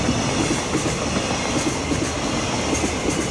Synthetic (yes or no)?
no